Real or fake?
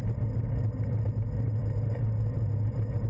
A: real